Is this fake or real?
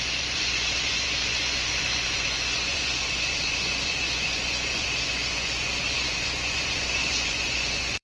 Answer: fake